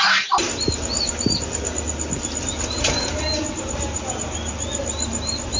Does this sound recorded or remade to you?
recorded